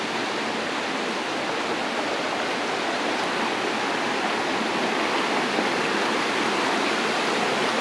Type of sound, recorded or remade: recorded